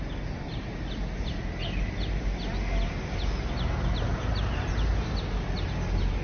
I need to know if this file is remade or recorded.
recorded